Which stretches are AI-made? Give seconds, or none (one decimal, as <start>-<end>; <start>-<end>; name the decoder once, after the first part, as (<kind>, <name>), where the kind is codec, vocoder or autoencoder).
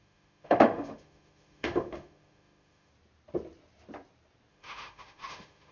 0.0-2.9 (autoencoder, DAC-VAE); 4.5-5.7